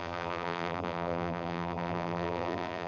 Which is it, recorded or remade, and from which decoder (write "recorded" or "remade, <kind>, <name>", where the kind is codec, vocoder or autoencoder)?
remade, vocoder, BigVGAN v2